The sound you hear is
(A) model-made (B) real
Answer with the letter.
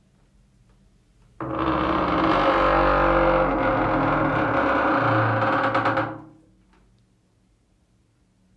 B